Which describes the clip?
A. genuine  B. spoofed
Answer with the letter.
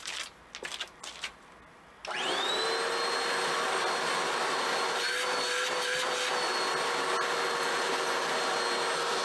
A